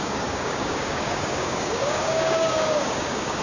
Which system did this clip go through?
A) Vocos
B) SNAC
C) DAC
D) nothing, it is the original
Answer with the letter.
C